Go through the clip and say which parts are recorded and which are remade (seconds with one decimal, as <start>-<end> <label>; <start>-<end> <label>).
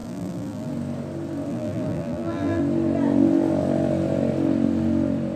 0.0-0.7 remade; 0.7-1.5 recorded; 1.5-2.6 remade; 2.6-5.4 recorded